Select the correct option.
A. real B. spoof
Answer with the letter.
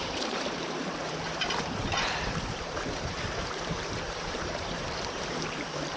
B